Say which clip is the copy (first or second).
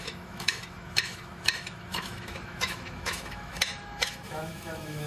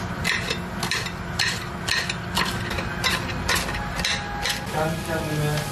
first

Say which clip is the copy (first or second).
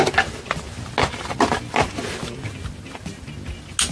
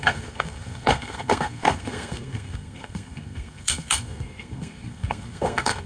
second